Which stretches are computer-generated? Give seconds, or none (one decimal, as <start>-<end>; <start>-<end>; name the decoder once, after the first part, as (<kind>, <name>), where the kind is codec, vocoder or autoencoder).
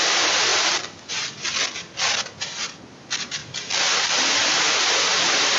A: none